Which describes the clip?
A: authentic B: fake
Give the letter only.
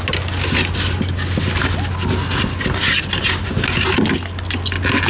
A